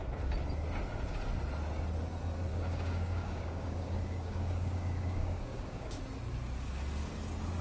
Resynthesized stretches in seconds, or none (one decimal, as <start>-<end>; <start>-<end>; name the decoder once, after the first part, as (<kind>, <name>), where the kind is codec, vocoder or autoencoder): 2.5-6.0 (codec, DAC)